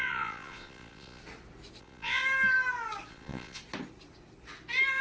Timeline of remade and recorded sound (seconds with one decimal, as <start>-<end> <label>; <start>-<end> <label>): 0.0-1.2 remade; 1.2-1.8 recorded; 1.8-2.2 remade; 2.2-3.1 recorded; 3.1-3.6 remade; 3.6-5.0 recorded

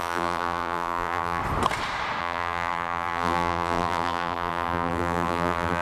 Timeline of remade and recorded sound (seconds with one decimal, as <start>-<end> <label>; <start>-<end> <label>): 0.0-1.4 remade; 1.4-2.2 recorded; 2.2-5.8 remade

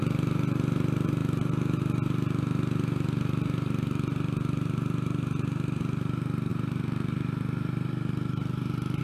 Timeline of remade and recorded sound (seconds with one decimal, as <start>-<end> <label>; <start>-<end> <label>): 0.0-6.5 recorded; 6.5-9.0 remade

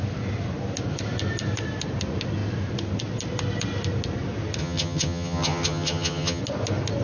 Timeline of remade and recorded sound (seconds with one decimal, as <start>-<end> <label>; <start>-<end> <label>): 0.0-4.6 recorded; 4.6-6.4 remade; 6.4-7.0 recorded

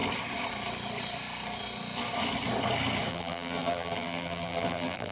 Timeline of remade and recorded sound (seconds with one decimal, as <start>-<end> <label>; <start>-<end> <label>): 0.0-3.1 recorded; 3.1-5.1 remade